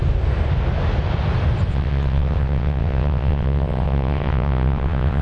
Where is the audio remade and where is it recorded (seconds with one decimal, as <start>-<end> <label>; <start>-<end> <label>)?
0.0-1.7 recorded; 1.7-5.2 remade